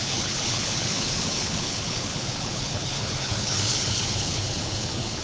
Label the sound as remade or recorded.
remade